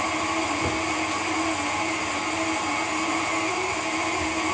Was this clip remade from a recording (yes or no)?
no